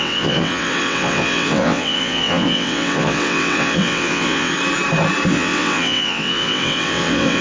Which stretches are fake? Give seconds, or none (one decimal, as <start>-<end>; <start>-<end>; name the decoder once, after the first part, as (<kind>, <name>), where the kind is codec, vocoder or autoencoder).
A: 0.0-4.5 (vocoder, WaveNeXt); 5.3-7.4